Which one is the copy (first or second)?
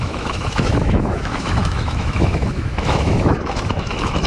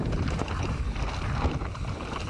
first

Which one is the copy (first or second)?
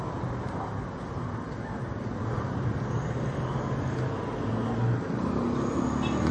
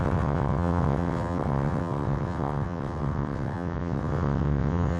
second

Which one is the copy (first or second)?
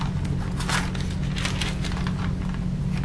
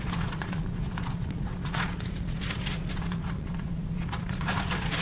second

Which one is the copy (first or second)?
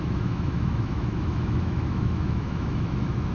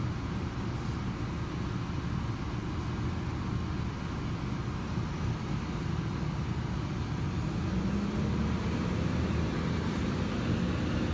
first